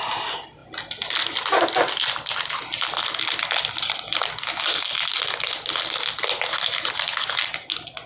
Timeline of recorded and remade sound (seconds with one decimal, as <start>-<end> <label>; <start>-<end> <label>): 0.0-8.1 recorded